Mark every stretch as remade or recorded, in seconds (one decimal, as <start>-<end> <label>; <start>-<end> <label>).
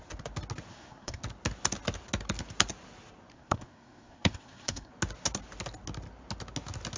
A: 0.0-0.7 recorded; 0.7-1.2 remade; 1.2-3.3 recorded; 3.3-4.9 remade; 4.9-7.0 recorded